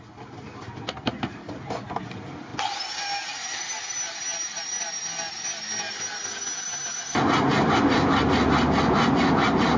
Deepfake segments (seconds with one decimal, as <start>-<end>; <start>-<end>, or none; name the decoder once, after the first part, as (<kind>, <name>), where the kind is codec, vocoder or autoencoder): none